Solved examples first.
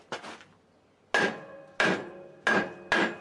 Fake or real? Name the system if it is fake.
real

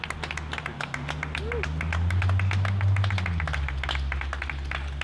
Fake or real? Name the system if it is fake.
real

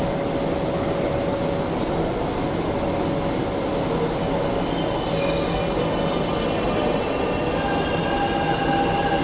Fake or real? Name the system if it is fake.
real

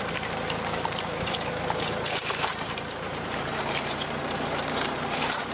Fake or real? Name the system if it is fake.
fake, vocoder, BigVGAN v2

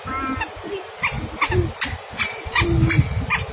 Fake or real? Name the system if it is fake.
real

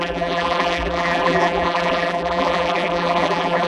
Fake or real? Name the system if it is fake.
fake, vocoder, BigVGAN v2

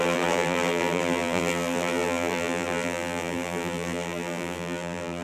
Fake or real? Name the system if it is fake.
fake, vocoder, BigVGAN v2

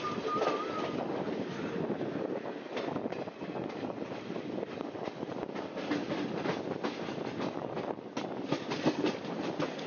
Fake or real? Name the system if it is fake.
real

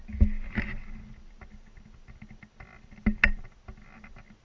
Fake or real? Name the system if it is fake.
real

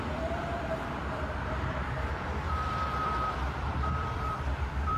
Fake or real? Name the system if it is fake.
fake, vocoder, BigVGAN v2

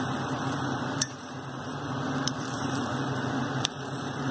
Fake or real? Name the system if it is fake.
fake, vocoder, BigVGAN v2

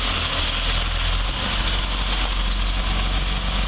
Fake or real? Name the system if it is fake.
real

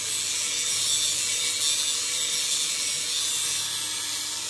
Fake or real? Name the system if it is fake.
real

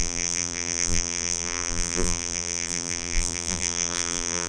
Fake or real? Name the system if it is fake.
fake, vocoder, BigVGAN v2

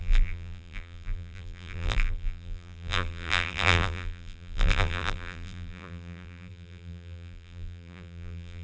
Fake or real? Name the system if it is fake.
fake, vocoder, BigVGAN v2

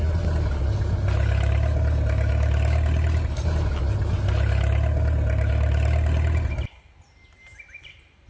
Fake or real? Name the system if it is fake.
real